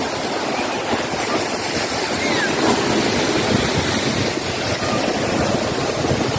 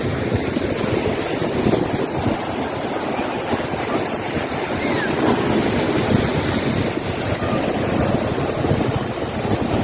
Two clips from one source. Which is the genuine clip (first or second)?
first